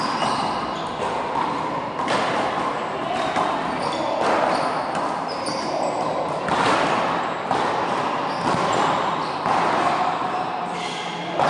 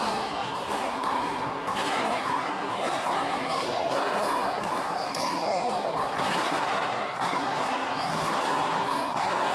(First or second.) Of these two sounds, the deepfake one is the second